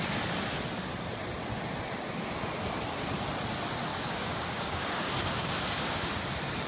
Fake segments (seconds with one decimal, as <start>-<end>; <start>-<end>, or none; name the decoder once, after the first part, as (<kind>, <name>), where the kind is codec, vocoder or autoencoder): 3.9-6.1 (codec, DAC)